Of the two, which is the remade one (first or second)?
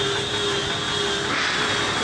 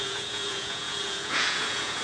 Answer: second